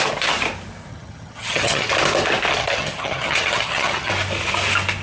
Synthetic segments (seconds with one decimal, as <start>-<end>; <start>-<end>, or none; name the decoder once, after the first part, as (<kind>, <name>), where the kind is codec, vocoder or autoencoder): 0.9-1.9 (vocoder, HiFi-GAN); 2.6-4.1